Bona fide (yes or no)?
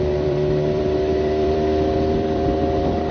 no